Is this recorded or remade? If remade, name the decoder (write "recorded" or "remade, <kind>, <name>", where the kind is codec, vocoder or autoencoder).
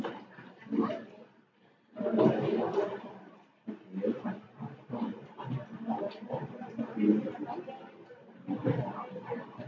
recorded